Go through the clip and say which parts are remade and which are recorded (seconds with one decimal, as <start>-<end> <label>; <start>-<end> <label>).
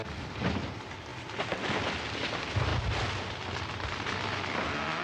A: 0.0-5.0 recorded